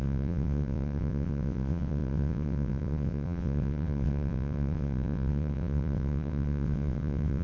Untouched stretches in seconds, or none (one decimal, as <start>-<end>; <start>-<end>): none

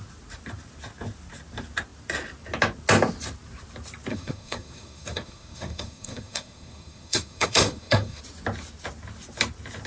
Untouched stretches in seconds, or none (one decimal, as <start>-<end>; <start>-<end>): 0.0-4.1; 8.2-9.9

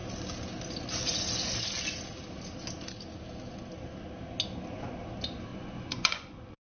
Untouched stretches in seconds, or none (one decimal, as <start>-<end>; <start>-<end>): 0.0-5.5

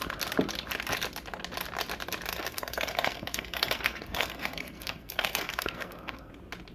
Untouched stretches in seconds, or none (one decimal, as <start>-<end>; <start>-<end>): 0.0-2.3; 6.3-6.7

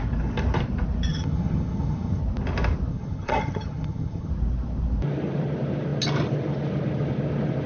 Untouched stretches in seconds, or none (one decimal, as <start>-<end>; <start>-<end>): 0.0-1.1; 2.2-2.9; 4.3-7.7

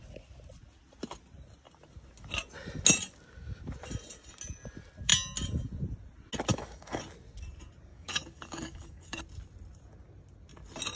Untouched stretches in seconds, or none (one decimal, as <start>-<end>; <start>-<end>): 0.0-6.5; 7.0-7.9; 9.2-11.0